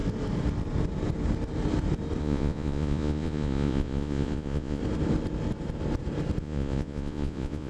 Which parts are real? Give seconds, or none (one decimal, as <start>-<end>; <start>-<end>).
0.0-2.2; 4.8-6.4